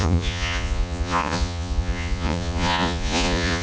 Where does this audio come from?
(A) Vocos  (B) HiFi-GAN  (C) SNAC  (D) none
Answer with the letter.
A